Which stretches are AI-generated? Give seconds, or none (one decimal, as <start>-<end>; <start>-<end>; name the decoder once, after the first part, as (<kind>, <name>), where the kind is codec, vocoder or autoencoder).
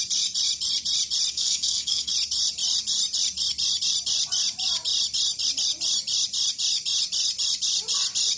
1.3-2.1 (codec, SNAC)